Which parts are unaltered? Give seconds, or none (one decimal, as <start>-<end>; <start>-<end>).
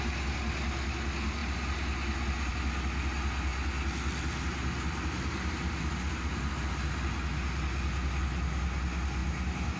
0.0-9.8